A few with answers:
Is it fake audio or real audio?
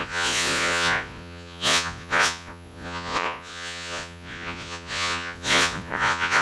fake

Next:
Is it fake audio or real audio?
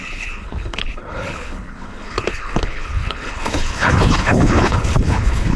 fake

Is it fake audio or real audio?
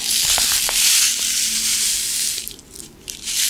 real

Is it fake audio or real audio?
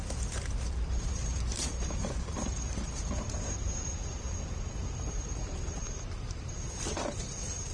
fake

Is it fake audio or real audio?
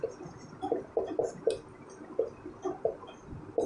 real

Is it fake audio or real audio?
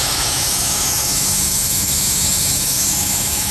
fake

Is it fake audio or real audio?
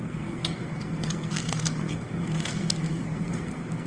fake